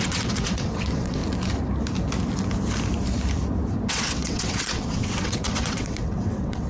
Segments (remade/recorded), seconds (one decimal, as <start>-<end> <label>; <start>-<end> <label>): 0.0-1.2 remade; 1.2-3.9 recorded; 3.9-6.7 remade